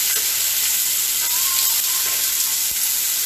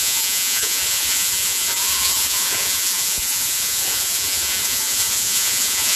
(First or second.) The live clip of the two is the first